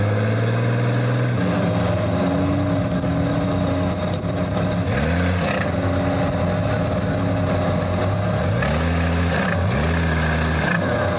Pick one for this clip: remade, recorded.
recorded